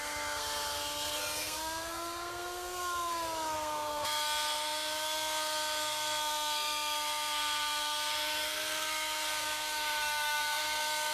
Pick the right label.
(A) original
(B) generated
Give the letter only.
B